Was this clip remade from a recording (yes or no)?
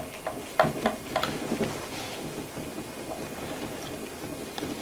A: no